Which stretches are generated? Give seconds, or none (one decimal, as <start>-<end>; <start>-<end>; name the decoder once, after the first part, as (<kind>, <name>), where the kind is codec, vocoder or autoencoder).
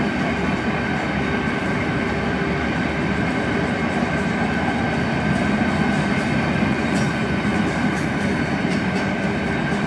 6.7-7.6 (vocoder, Vocos)